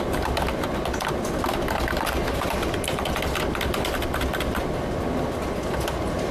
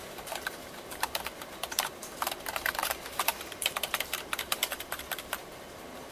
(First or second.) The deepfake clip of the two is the second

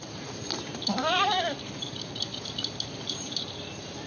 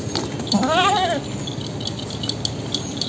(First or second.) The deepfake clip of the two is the first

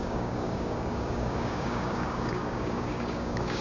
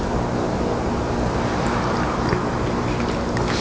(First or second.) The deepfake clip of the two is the first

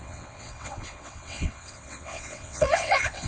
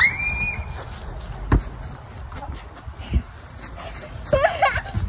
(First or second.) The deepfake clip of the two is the first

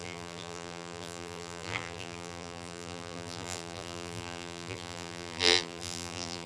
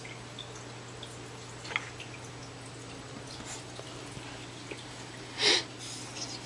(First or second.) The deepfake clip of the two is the first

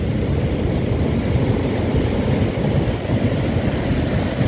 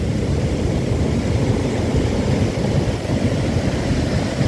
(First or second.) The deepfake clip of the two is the second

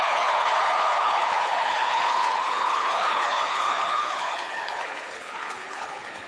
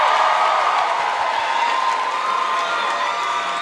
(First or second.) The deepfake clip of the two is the first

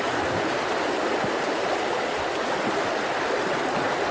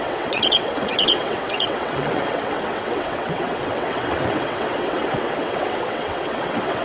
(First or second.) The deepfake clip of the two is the second